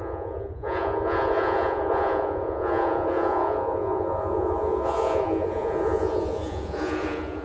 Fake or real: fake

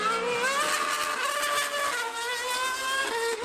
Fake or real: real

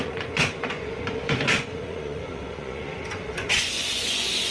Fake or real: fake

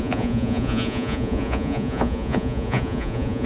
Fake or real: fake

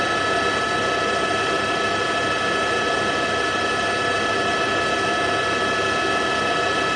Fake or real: real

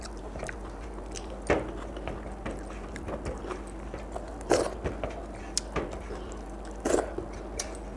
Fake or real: real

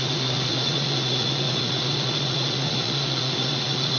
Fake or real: fake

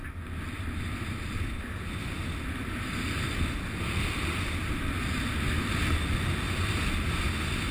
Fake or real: real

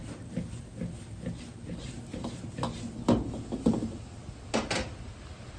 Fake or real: real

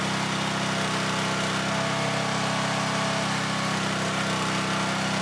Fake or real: real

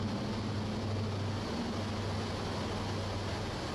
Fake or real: real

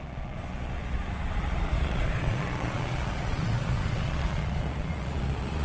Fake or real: fake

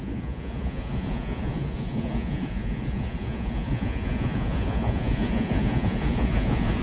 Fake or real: fake